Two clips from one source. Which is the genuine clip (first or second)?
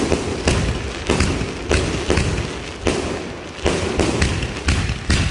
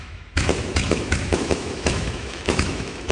first